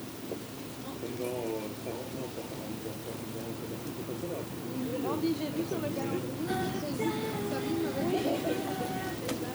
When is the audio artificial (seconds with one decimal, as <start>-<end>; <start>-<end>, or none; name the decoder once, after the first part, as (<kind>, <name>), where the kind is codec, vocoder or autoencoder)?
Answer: 0.0-1.2 (vocoder, BigVGAN v2); 1.9-3.0; 3.7-4.9; 8.2-9.5